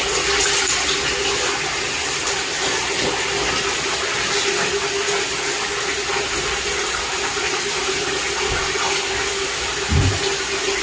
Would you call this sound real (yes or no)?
yes